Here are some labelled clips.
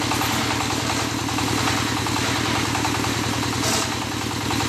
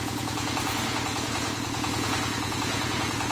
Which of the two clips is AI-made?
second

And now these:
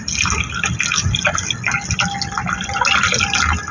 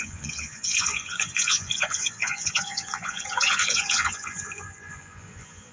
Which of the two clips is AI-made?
second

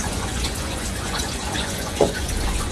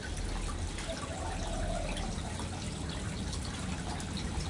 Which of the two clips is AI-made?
first